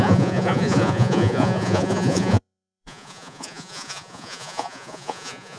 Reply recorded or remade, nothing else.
remade